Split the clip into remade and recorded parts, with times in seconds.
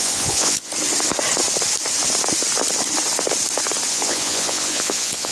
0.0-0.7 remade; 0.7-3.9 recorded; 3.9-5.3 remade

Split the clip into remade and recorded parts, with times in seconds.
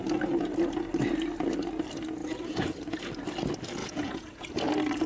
0.0-2.2 recorded; 2.2-3.0 remade; 3.0-3.8 recorded; 3.8-4.5 remade; 4.5-5.1 recorded